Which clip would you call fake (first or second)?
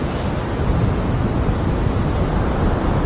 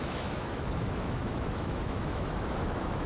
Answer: second